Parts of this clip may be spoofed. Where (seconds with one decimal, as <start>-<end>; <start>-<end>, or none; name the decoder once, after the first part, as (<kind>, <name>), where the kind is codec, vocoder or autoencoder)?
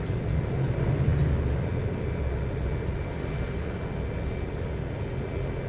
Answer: none